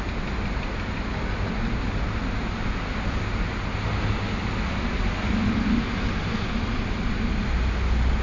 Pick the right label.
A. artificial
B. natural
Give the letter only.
B